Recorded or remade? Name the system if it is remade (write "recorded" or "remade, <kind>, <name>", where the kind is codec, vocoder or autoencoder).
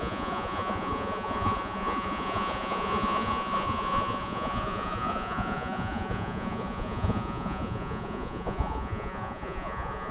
remade, vocoder, Vocos